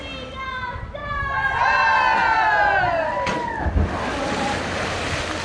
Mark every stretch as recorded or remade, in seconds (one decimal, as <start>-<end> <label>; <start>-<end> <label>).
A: 0.0-5.4 recorded